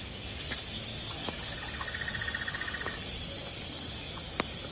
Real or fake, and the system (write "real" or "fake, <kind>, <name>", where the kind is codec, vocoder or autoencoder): real